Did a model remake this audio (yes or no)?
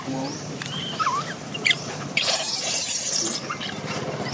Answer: yes